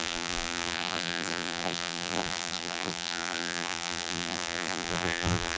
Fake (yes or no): yes